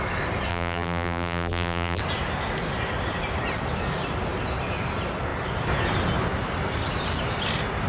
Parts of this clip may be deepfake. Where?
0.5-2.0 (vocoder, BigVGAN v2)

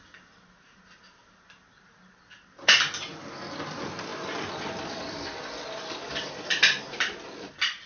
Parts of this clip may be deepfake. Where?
4.1-6.8 (vocoder, BigVGAN v2)

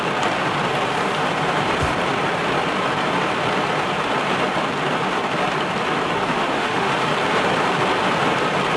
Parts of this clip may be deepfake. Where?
6.3-6.9 (autoencoder, DAC-VAE)

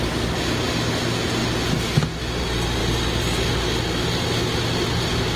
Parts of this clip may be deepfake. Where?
none

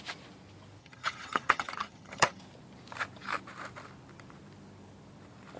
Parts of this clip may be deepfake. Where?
0.8-2.4 (vocoder, HiFi-GAN)

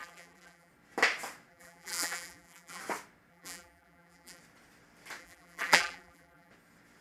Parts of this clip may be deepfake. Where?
0.0-0.7 (vocoder, BigVGAN v2); 1.5-2.8; 3.3-4.4; 5.2-6.5

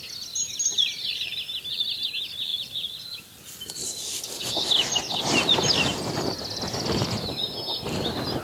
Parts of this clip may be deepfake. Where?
5.9-6.6 (vocoder, BigVGAN v2)